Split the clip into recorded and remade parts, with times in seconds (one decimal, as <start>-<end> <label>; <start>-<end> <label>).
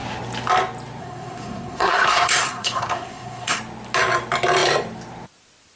0.0-1.0 recorded; 1.0-3.6 remade; 3.6-5.8 recorded